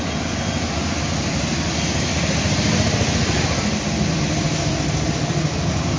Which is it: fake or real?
real